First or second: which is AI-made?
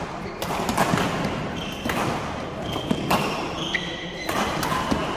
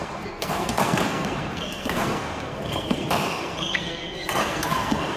second